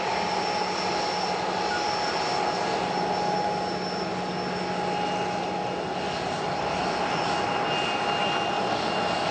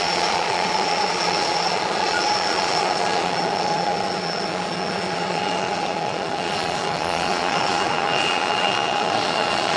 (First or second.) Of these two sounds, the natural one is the first